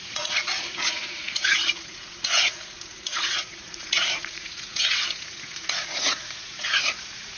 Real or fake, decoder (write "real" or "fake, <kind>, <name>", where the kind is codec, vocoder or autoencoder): fake, vocoder, Vocos